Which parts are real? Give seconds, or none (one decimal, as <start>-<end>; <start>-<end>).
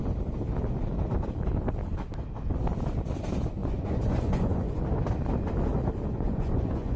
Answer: 0.0-3.6; 4.8-6.1